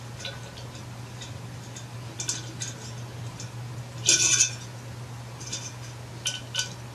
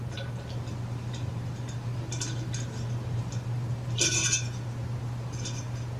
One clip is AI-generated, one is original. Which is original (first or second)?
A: first